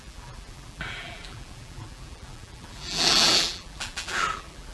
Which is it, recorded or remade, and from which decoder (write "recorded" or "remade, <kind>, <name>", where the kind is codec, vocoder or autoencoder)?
remade, vocoder, BigVGAN v2